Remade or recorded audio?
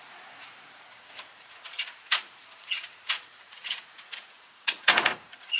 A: remade